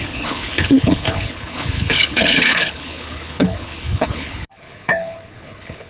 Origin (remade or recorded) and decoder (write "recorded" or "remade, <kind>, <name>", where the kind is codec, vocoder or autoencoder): remade, codec, HILCodec